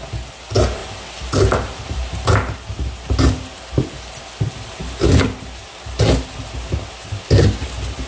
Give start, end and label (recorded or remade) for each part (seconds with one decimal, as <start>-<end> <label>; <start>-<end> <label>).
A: 0.0-8.1 recorded